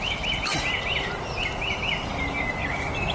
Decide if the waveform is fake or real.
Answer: real